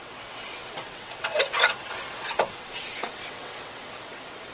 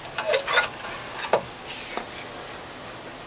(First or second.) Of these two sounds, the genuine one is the second